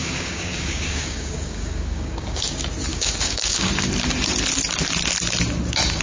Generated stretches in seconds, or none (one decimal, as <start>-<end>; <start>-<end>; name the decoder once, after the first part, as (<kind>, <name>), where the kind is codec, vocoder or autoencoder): 0.0-2.5 (codec, DAC); 2.9-3.7